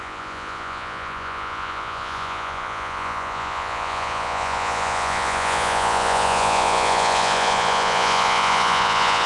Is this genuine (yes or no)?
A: no